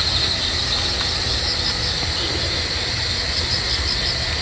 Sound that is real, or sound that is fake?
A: real